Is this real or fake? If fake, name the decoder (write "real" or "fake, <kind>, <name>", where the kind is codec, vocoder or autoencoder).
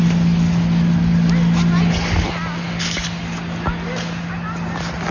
real